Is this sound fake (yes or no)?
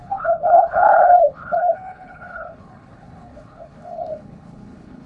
yes